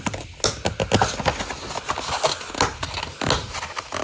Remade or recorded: recorded